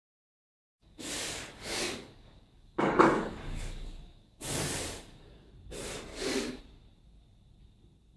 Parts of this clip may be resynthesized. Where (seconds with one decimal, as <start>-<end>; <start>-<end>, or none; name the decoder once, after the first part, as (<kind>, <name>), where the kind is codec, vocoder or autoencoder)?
0.7-5.5 (codec, DAC); 6.1-6.6